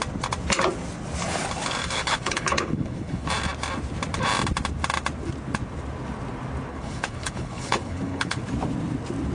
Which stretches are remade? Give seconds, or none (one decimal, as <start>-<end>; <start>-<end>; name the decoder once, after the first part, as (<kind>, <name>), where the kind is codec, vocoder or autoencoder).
1.8-3.3 (codec, HILCodec); 6.7-8.4